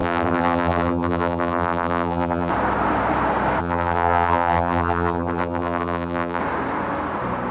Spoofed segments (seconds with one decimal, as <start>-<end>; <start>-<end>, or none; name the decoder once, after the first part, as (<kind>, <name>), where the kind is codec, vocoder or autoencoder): 0.0-2.5 (vocoder, BigVGAN v2); 3.6-6.4